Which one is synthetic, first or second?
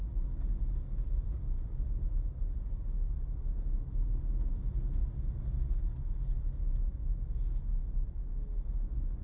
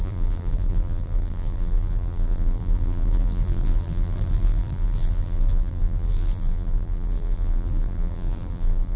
second